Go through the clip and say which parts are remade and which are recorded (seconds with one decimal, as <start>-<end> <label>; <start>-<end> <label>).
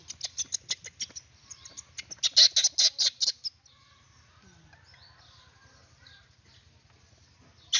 0.0-7.8 recorded